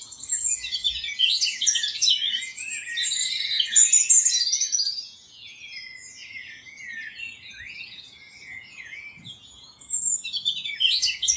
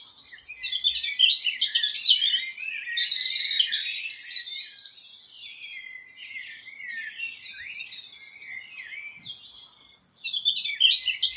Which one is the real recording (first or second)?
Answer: second